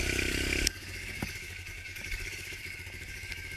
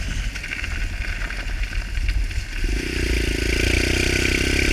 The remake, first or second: first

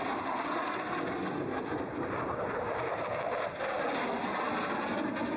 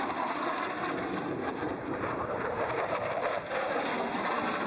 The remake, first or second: second